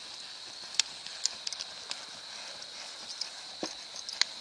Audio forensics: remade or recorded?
recorded